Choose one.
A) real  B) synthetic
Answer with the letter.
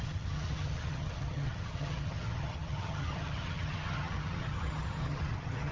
B